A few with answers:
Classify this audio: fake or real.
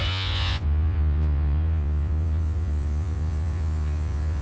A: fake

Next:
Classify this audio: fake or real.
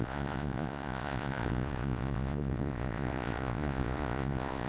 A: fake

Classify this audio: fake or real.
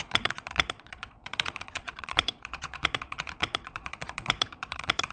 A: fake